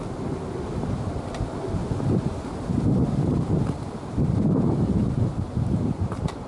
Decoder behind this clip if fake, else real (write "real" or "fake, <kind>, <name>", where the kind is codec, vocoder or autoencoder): real